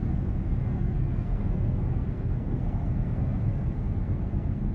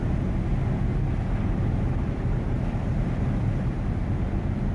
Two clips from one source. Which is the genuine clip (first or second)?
second